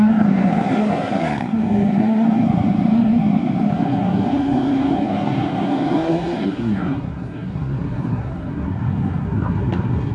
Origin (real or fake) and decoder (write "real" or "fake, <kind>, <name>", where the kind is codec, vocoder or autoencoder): fake, codec, SNAC